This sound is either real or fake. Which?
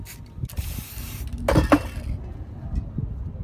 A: real